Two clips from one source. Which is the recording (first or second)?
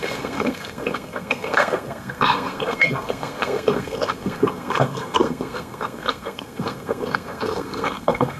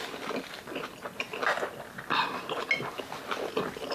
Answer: second